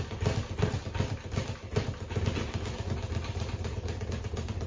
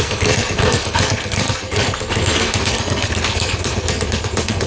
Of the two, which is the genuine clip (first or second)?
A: first